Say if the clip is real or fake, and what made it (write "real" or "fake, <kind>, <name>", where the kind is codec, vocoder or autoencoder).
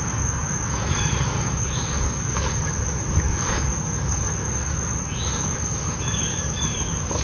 fake, codec, DAC